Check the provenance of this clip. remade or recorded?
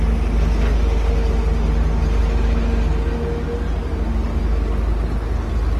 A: recorded